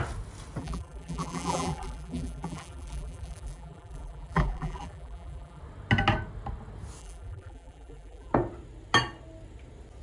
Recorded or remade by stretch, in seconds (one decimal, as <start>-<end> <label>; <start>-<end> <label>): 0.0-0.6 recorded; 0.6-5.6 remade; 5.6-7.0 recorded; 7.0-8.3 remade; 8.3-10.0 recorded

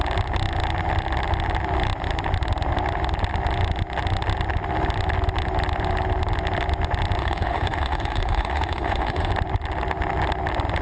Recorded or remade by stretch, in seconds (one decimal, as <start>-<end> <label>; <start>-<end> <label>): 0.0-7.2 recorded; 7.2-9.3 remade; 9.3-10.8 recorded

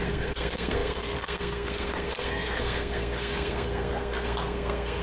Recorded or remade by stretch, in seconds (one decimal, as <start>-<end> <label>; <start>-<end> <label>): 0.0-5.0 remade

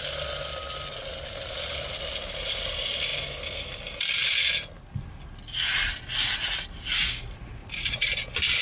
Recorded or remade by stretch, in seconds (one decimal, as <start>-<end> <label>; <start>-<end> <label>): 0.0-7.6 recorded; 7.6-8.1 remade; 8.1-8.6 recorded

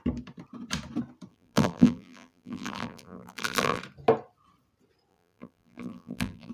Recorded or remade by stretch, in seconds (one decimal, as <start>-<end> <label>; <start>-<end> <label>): 0.0-1.3 recorded; 1.3-3.8 remade; 3.8-5.1 recorded; 5.1-6.5 remade

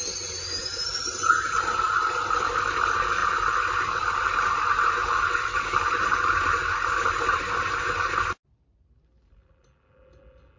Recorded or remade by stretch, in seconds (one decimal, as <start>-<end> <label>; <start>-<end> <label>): 0.0-10.6 recorded

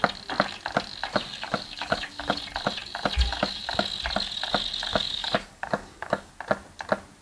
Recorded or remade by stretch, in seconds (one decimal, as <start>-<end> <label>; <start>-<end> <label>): 0.0-1.1 recorded; 1.1-2.4 remade; 2.4-4.9 recorded; 4.9-6.3 remade; 6.3-7.2 recorded

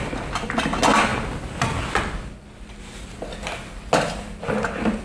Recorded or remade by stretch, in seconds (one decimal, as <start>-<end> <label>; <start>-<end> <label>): 0.0-5.0 recorded